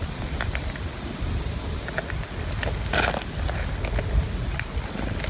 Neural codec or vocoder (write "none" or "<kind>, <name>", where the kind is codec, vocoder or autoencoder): none